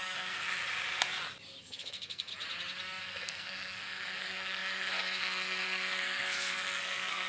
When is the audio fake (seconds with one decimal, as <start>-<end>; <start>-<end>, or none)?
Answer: 0.0-0.5; 1.6-2.3; 3.0-7.3